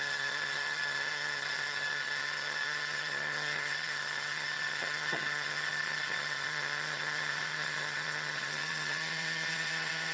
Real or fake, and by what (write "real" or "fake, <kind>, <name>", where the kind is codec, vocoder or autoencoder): fake, vocoder, HiFi-GAN